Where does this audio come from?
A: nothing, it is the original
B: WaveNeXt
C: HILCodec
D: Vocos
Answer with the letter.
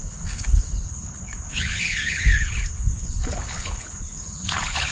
C